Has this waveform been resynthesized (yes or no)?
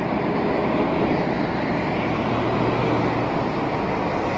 no